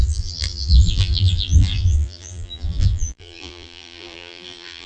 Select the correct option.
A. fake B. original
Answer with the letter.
A